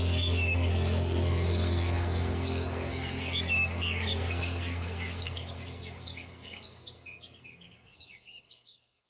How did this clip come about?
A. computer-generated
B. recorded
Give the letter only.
A